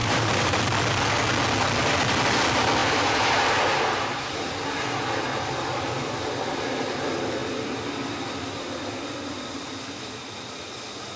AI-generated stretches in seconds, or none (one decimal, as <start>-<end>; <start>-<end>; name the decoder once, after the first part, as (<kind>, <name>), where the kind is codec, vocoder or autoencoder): 0.0-0.6 (vocoder, BigVGAN v2); 2.8-4.3